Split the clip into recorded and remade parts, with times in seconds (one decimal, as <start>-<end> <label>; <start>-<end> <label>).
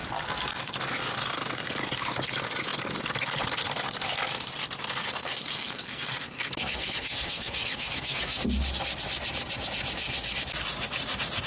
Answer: 0.0-5.0 recorded; 5.0-8.4 remade; 8.4-11.5 recorded